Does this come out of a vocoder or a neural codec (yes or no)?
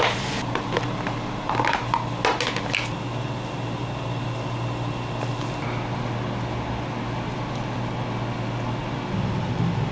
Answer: no